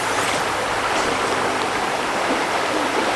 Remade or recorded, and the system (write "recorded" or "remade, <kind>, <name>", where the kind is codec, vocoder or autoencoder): recorded